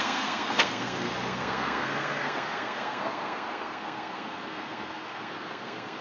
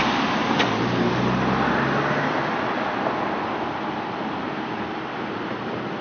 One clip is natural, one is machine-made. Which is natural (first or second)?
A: second